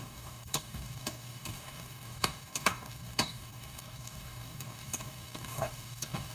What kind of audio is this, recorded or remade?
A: remade